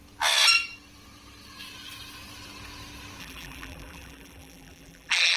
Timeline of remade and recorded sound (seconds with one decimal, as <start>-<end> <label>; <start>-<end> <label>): 0.0-3.2 recorded; 3.2-5.4 remade